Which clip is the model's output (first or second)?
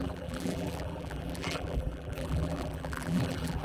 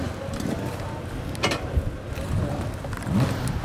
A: first